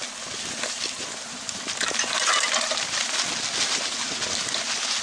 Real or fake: real